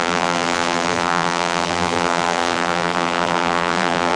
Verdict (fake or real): fake